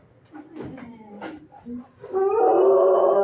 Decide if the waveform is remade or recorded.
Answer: recorded